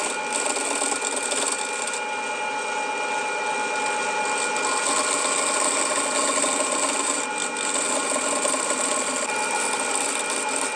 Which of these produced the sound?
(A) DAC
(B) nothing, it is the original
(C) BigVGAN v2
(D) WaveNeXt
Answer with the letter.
B